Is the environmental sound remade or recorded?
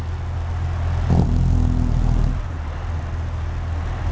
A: recorded